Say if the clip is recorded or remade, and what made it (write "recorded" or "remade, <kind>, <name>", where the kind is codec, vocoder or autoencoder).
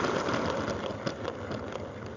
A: recorded